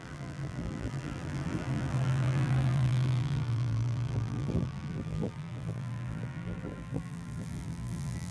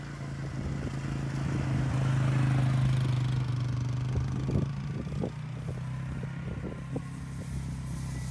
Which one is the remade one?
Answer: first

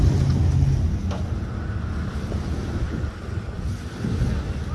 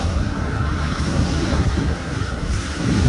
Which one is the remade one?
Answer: second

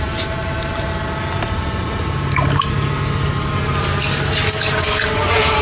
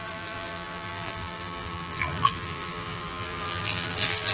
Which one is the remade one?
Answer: second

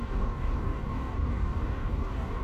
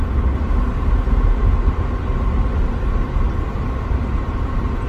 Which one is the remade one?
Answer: first